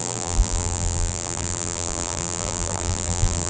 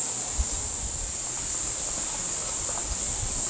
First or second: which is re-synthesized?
first